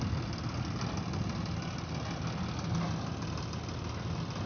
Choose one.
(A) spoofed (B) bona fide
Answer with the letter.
B